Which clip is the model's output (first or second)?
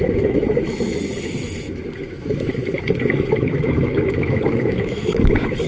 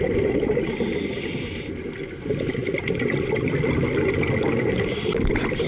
first